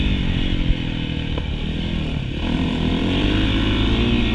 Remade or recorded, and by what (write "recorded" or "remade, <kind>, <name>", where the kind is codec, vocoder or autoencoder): recorded